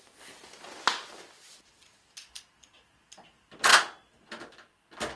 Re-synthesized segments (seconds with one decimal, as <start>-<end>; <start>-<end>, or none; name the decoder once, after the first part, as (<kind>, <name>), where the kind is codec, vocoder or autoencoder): none